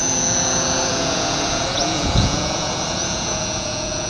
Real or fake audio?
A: fake